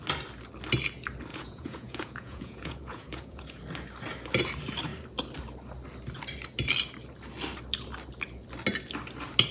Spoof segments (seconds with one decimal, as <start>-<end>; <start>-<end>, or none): 1.3-3.6